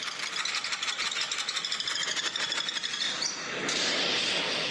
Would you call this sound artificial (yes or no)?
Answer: no